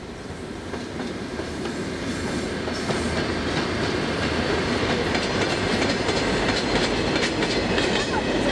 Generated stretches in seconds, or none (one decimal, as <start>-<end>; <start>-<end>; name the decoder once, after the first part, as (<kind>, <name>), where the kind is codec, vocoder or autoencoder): none